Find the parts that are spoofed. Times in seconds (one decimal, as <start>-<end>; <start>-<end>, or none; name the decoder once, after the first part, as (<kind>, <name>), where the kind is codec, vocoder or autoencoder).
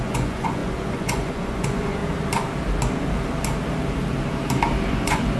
0.0-2.0 (vocoder, Vocos); 4.9-5.4